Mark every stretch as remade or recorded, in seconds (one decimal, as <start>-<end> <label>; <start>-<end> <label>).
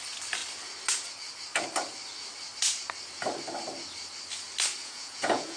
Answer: 0.0-4.8 recorded; 4.8-5.6 remade